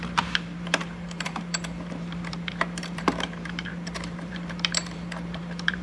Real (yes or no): no